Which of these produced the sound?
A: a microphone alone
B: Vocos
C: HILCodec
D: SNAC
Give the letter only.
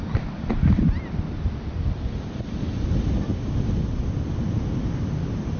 A